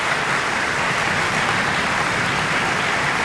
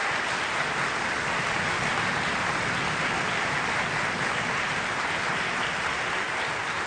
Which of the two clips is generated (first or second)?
first